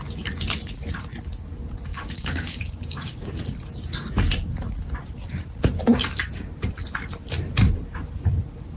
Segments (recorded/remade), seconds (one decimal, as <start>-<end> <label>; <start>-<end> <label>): 0.0-1.9 recorded; 1.9-3.3 remade; 3.3-8.8 recorded